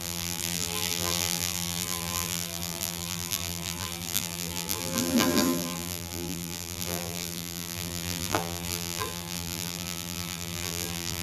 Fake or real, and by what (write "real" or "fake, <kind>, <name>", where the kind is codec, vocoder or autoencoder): fake, vocoder, BigVGAN v2